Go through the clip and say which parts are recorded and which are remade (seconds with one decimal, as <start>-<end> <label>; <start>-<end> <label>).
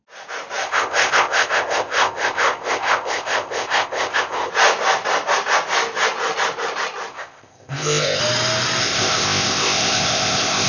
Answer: 0.0-0.6 recorded; 0.6-4.5 remade; 4.5-7.1 recorded; 7.1-8.2 remade; 8.2-8.8 recorded; 8.8-10.7 remade